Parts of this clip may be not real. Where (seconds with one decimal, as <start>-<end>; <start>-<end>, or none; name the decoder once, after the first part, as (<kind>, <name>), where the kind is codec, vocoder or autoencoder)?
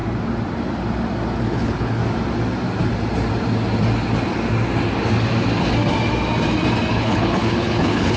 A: 1.4-2.0 (codec, HILCodec); 6.9-8.2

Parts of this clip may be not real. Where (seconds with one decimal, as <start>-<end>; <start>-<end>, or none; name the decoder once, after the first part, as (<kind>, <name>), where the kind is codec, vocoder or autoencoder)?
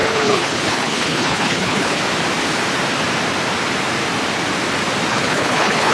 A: 0.0-2.0 (codec, HILCodec); 5.1-5.9